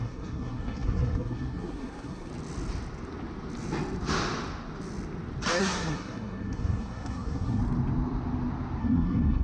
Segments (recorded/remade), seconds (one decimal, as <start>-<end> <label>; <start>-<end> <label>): 0.0-2.3 remade; 2.3-5.6 recorded; 5.6-7.6 remade; 7.6-8.8 recorded; 8.8-9.4 remade